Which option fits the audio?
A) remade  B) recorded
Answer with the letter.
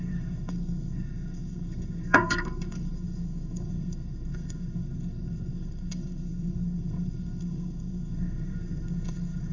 A